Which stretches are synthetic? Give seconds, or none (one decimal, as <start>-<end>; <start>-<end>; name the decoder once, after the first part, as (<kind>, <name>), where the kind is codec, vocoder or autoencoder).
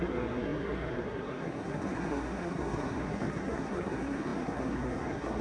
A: 0.0-5.4 (codec, SNAC)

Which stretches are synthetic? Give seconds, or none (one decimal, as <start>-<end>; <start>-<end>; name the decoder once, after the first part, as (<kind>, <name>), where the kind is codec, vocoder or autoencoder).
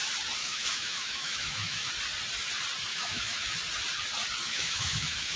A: 0.4-1.9 (autoencoder, DAC-VAE); 2.9-3.5; 4.4-5.4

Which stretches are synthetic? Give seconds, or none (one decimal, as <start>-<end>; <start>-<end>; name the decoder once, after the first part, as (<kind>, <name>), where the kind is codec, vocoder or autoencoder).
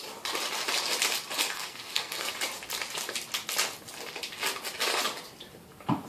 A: 1.4-2.3 (codec, SNAC)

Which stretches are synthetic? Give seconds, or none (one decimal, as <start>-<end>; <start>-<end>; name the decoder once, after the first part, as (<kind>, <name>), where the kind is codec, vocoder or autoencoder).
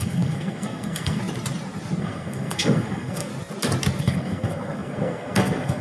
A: 0.0-1.2 (codec, SNAC); 2.0-3.3; 4.0-5.8